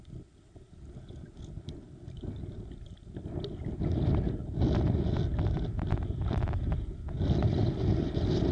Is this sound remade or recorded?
recorded